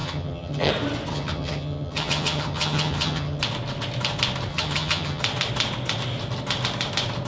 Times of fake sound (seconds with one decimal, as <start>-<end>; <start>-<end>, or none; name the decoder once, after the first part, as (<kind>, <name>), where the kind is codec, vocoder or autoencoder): 0.0-0.7 (vocoder, HiFi-GAN); 1.1-3.4; 4.5-5.2